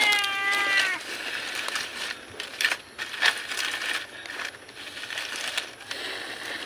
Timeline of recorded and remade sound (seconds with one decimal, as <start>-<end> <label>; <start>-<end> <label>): 0.0-6.7 recorded